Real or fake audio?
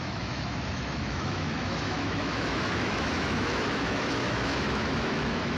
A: fake